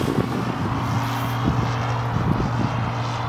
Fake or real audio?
real